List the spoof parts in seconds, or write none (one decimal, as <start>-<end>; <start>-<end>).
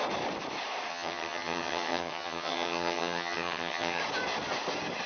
0.9-4.0